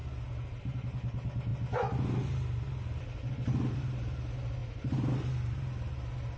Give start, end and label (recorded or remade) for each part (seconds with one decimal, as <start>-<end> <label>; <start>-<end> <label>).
0.0-6.4 recorded

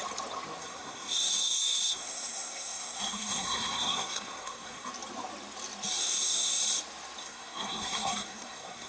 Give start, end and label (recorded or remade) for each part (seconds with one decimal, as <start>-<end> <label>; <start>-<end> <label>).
0.0-0.6 recorded; 0.6-4.9 remade; 4.9-6.0 recorded; 6.0-6.6 remade; 6.6-7.2 recorded; 7.2-8.9 remade